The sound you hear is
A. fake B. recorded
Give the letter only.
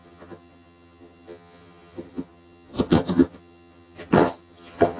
A